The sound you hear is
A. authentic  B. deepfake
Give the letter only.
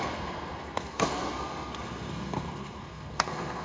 B